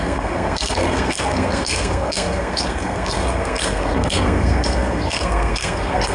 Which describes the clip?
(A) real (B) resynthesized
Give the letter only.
B